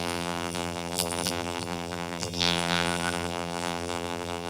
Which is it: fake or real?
fake